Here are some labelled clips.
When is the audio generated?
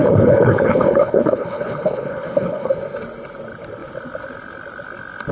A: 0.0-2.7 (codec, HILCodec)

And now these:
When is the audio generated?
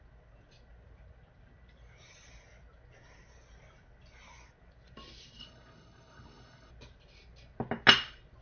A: 5.4-6.7 (codec, HILCodec)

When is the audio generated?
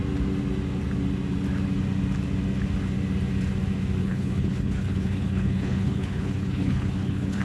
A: 4.0-7.4 (codec, HILCodec)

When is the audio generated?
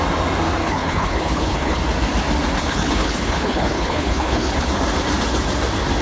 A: 0.6-1.8 (codec, HILCodec); 2.6-4.7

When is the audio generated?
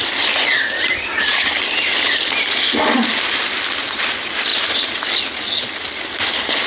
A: none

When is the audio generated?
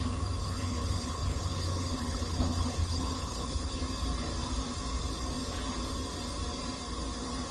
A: 0.4-3.8 (codec, HILCodec)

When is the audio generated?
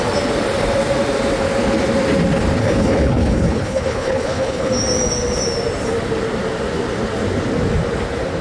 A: 2.6-4.7 (codec, HILCodec)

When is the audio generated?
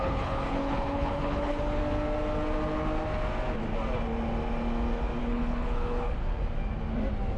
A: 0.0-1.8 (codec, HILCodec); 5.2-6.2